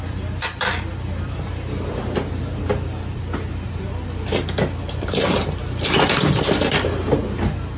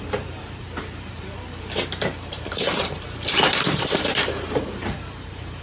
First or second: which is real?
first